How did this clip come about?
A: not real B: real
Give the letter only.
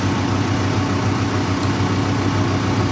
B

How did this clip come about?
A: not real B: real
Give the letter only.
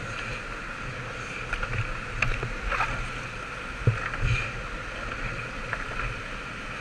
B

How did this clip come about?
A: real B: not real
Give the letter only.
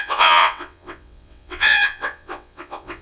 B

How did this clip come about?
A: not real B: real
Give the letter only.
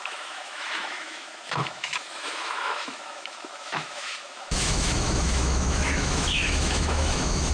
A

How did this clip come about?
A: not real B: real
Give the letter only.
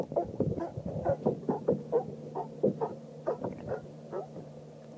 A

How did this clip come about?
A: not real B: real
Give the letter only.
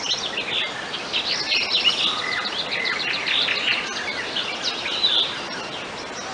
B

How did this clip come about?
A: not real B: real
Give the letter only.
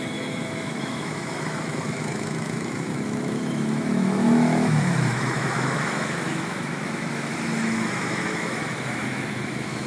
A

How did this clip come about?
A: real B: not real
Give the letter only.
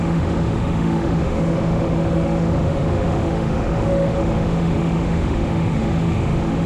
B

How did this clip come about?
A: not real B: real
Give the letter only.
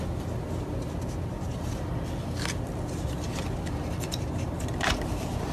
B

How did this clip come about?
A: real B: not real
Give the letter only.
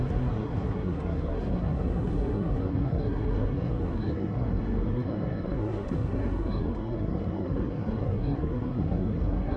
B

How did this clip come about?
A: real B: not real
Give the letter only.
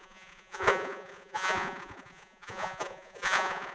B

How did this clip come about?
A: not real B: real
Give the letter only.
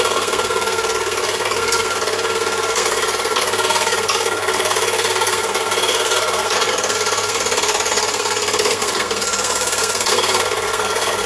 A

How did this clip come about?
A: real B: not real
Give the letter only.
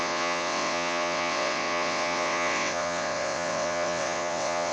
B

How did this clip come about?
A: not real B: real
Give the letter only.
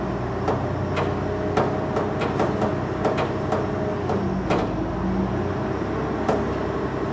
B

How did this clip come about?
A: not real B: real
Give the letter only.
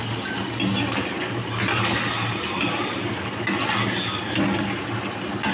B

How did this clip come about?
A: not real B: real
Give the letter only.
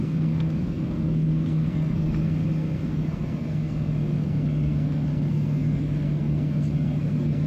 A